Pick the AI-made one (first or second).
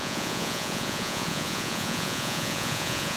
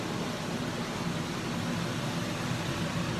first